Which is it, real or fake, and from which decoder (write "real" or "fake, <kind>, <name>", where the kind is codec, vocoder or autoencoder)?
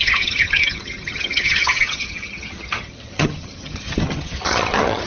fake, vocoder, HiFi-GAN